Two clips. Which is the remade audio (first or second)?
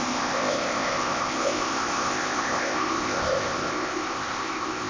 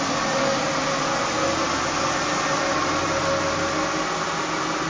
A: first